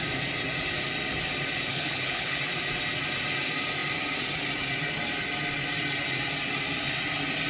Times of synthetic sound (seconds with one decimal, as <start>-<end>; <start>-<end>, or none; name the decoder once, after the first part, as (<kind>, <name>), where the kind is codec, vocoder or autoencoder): 1.7-2.4 (codec, HILCodec)